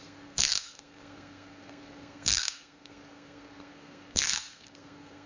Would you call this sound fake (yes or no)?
yes